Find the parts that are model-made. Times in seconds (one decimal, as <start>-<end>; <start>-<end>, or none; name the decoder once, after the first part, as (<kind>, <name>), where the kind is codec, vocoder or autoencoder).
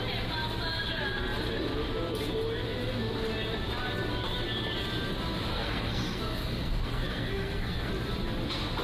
5.5-7.9 (codec, SNAC)